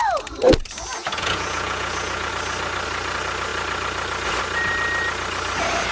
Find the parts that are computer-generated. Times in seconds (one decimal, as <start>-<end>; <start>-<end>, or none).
1.0-2.3